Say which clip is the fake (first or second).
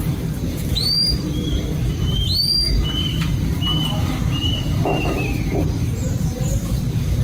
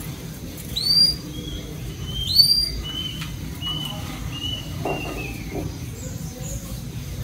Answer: first